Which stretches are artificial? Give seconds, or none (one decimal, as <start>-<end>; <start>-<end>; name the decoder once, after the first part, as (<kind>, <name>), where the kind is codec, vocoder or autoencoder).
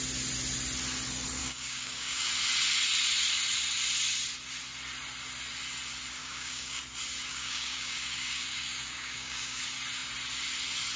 1.4-2.3 (codec, DAC); 6.2-6.8; 7.3-9.6